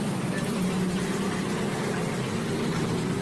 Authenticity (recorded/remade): recorded